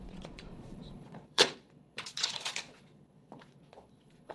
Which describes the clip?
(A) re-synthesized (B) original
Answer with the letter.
A